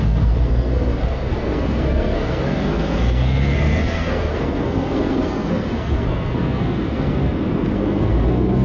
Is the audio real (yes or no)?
no